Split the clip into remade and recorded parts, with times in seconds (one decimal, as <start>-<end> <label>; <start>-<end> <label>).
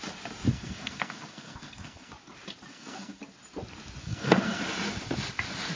0.0-0.5 recorded; 0.5-2.1 remade; 2.1-2.7 recorded; 2.7-3.2 remade; 3.2-4.0 recorded; 4.0-4.6 remade; 4.6-5.8 recorded